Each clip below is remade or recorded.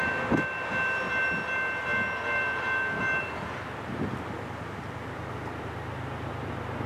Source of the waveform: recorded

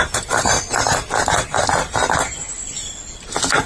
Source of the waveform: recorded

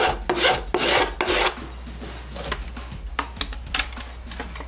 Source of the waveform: recorded